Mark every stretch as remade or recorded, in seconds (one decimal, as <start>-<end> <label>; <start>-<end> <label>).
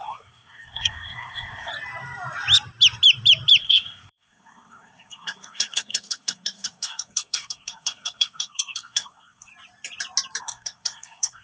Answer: 0.0-1.7 remade; 1.7-3.6 recorded; 3.6-9.5 remade; 9.5-10.4 recorded; 10.4-11.4 remade